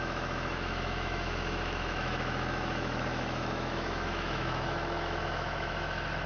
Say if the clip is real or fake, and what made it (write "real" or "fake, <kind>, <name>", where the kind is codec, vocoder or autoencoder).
fake, autoencoder, DAC-VAE